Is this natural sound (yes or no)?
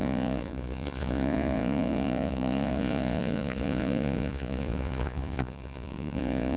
no